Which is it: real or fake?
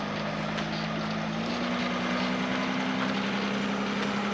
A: real